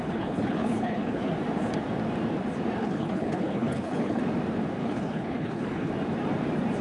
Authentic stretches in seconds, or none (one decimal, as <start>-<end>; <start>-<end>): 1.3-2.8; 4.2-4.8; 5.9-6.8